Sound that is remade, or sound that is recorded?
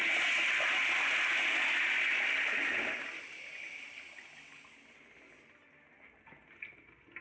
recorded